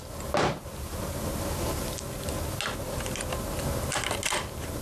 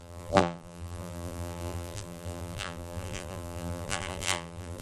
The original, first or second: first